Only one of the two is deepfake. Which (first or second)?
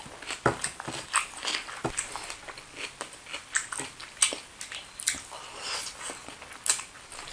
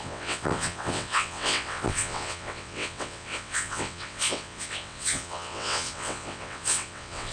second